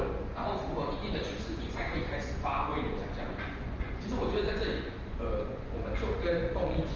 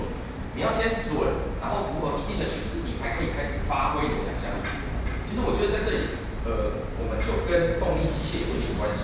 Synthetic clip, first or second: first